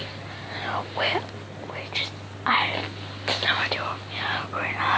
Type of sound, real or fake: real